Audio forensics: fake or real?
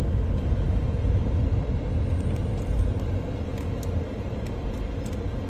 real